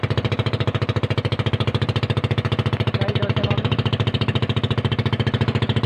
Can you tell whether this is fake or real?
real